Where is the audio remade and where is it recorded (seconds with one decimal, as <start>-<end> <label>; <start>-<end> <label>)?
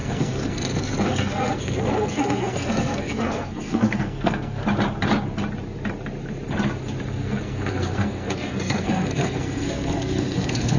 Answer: 0.0-4.6 remade; 4.6-7.2 recorded; 7.2-10.8 remade